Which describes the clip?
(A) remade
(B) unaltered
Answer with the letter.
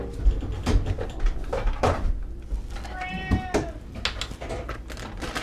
B